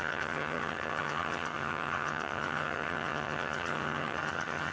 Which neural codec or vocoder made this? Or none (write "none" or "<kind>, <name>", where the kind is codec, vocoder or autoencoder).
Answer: vocoder, HiFi-GAN